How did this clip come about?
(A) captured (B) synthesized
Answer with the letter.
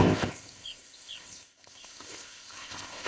B